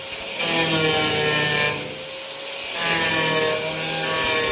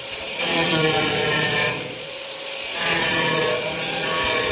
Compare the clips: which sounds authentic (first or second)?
first